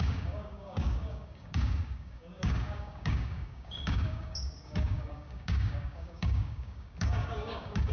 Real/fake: fake